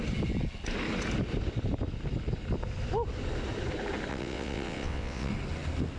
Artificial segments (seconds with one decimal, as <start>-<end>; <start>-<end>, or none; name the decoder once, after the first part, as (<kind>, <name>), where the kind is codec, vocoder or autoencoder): 4.1-5.3 (vocoder, WaveNeXt)